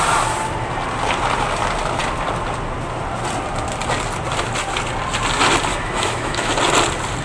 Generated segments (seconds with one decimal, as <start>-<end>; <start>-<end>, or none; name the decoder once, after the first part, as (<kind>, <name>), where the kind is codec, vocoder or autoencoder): 5.7-6.5 (autoencoder, DAC-VAE)